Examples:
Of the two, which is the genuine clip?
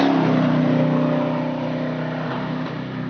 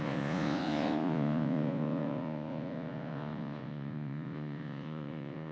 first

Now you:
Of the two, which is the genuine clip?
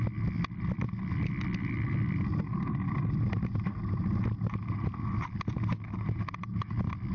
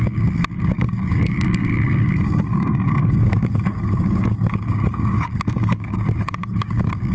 first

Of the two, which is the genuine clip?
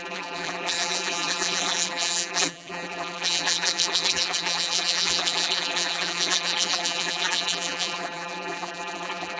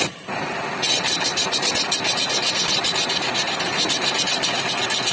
second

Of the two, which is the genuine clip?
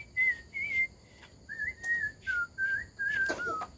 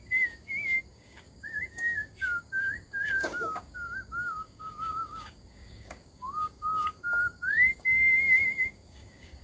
first